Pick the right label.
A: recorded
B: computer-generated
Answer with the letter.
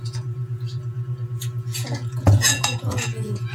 B